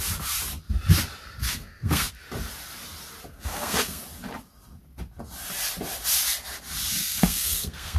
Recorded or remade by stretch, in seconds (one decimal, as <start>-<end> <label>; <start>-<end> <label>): 0.0-1.4 recorded; 1.4-2.1 remade; 2.1-3.3 recorded; 3.3-4.0 remade; 4.0-7.0 recorded; 7.0-8.0 remade

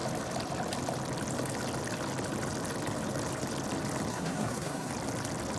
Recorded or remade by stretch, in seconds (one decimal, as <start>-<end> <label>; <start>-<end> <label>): 0.0-4.1 recorded; 4.1-4.9 remade; 4.9-5.6 recorded

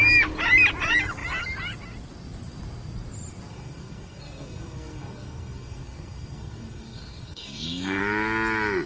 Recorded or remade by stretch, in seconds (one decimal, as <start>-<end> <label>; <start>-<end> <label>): 0.0-3.5 recorded; 3.5-8.0 remade; 8.0-8.9 recorded